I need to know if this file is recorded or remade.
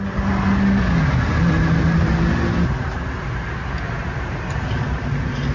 recorded